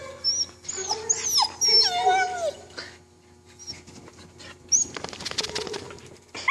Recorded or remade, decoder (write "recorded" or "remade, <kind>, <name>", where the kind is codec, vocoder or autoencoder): recorded